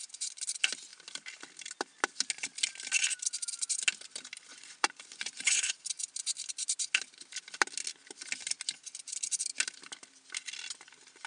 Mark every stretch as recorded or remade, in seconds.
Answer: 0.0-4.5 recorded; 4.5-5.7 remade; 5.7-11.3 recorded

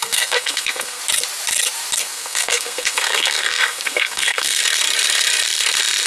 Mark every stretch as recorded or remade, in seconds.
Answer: 0.0-1.0 remade; 1.0-2.0 recorded; 2.0-4.6 remade; 4.6-6.1 recorded

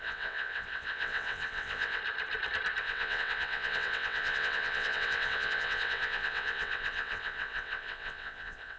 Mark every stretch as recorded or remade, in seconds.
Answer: 0.0-2.0 remade; 2.0-2.8 recorded; 2.8-8.8 remade

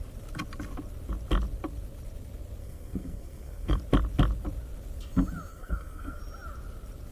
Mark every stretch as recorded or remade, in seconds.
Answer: 0.0-2.6 recorded; 2.6-3.8 remade; 3.8-5.5 recorded; 5.5-6.2 remade; 6.2-7.1 recorded

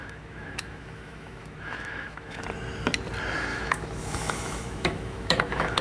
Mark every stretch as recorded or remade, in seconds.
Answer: 0.0-2.4 remade; 2.4-3.5 recorded; 3.5-5.8 remade

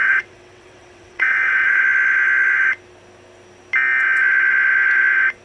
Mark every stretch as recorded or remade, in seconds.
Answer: 0.0-1.8 remade; 1.8-5.4 recorded